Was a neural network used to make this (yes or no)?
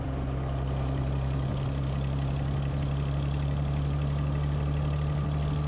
no